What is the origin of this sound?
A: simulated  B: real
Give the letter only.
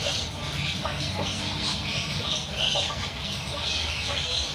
A